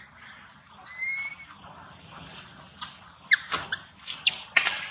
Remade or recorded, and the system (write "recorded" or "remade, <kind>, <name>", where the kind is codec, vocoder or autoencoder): recorded